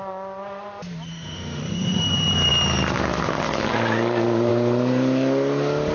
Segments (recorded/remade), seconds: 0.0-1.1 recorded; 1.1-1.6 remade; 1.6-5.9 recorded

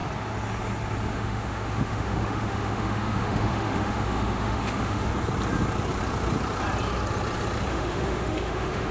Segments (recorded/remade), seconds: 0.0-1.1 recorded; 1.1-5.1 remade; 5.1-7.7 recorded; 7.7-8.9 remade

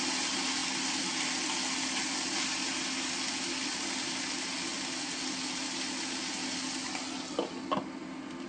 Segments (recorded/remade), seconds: 0.0-8.5 recorded

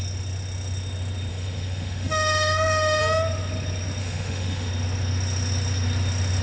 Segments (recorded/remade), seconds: 0.0-1.3 recorded; 1.3-3.0 remade; 3.0-4.0 recorded; 4.0-4.7 remade; 4.7-6.4 recorded

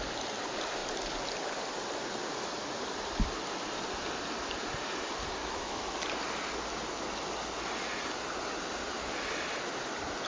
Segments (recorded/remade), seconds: 0.0-5.4 recorded; 5.4-5.9 remade; 5.9-10.3 recorded

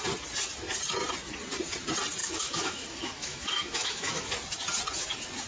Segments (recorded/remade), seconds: 0.0-2.2 recorded; 2.2-4.3 remade; 4.3-5.5 recorded